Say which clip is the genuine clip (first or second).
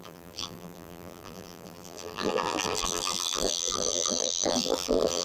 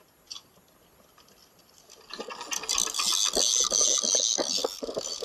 second